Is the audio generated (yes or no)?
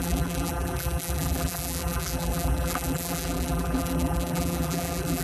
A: yes